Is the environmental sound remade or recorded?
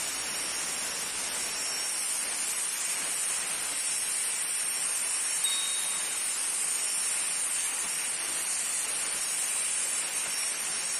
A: recorded